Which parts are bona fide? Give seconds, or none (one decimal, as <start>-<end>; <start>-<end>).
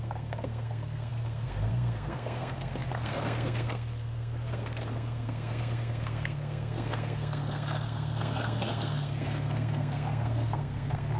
none